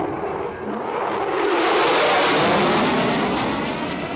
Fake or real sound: real